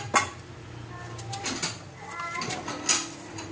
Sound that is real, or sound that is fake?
real